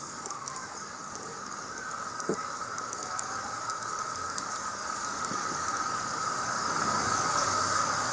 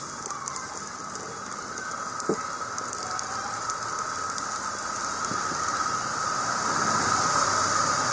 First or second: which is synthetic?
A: first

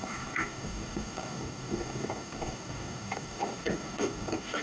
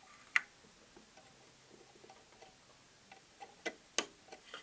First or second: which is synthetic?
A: first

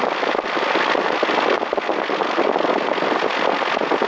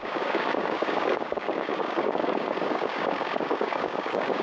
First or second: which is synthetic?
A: second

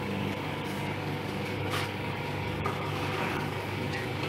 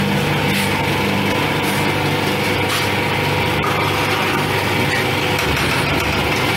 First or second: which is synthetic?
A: first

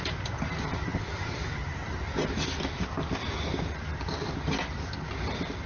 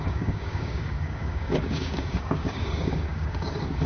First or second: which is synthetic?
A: second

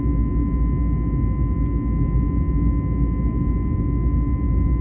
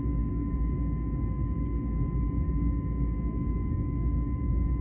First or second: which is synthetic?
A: second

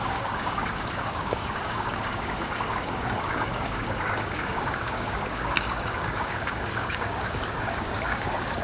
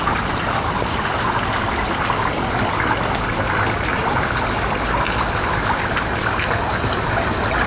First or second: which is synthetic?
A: first